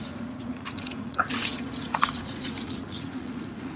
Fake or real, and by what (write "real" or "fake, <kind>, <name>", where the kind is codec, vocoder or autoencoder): fake, vocoder, Vocos